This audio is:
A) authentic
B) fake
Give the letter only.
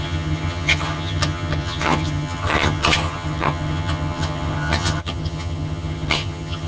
B